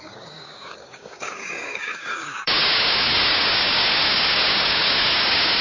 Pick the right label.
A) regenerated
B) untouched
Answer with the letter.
A